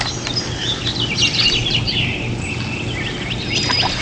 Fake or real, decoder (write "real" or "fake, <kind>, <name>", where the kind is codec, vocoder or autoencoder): real